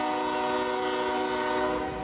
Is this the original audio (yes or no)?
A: yes